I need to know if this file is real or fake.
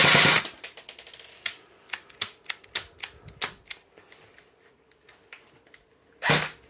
real